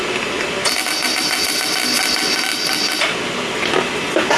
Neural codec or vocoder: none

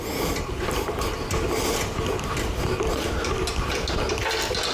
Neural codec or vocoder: none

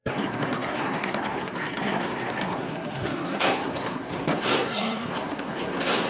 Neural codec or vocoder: codec, SNAC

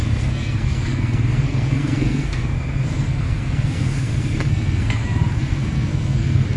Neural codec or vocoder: codec, SNAC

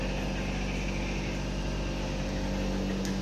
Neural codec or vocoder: none